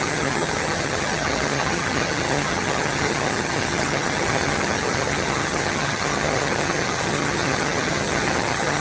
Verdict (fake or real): fake